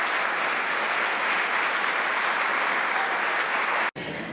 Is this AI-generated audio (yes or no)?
no